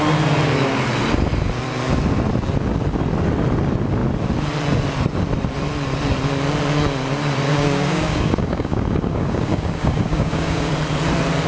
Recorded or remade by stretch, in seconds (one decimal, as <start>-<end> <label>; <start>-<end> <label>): 0.0-7.5 recorded; 7.5-10.7 remade; 10.7-11.5 recorded